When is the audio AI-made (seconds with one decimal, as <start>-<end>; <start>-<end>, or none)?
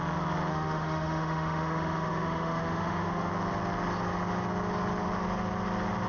0.5-3.3